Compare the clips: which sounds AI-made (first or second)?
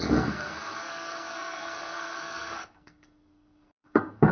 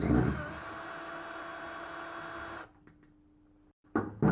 first